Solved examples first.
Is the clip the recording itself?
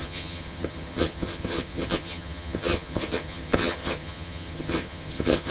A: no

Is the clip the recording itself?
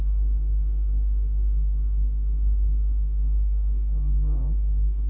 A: no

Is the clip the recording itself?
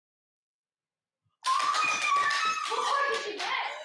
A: yes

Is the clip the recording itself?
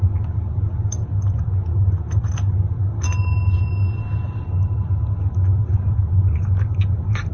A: yes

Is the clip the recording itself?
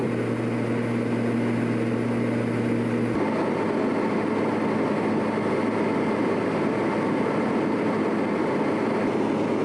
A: yes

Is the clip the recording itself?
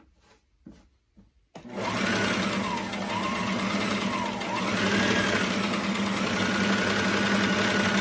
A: yes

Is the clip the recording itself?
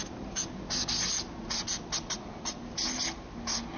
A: yes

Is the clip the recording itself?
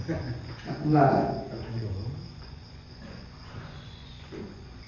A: no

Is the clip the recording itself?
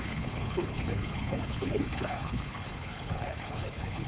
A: no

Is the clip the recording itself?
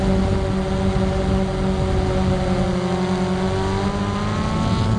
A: yes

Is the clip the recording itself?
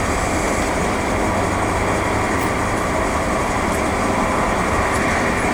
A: yes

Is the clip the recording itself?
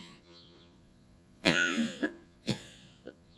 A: no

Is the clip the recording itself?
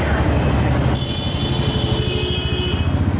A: yes